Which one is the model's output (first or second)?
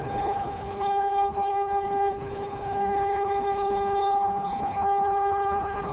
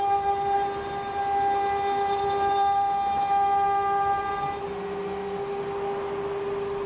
first